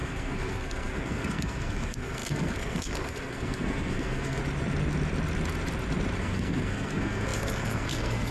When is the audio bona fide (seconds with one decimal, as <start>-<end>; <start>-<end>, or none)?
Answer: 4.4-6.2